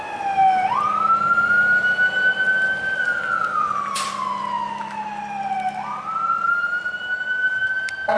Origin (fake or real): real